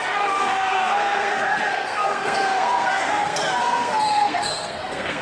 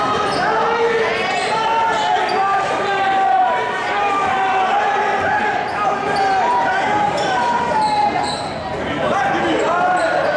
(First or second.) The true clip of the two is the second